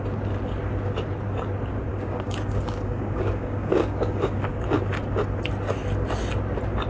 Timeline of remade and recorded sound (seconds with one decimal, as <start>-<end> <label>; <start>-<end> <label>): 0.0-1.9 recorded; 1.9-4.6 remade; 4.6-6.9 recorded